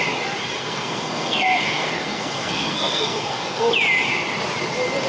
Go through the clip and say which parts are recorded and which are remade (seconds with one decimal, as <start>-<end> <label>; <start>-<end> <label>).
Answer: 0.0-0.6 recorded; 0.6-3.7 remade; 3.7-5.1 recorded